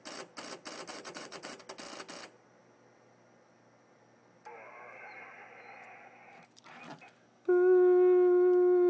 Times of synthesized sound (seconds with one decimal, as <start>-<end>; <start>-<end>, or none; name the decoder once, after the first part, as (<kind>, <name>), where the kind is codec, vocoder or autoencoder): 0.9-1.6 (vocoder, WaveNeXt)